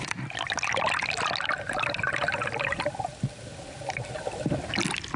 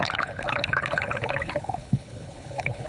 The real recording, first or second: first